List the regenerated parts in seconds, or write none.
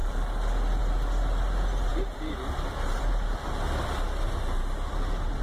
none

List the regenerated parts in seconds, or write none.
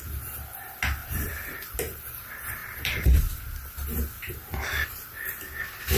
1.0-2.0; 2.6-3.2